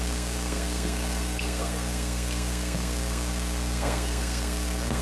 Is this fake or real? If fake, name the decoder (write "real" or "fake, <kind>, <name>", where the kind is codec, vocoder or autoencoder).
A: fake, codec, SNAC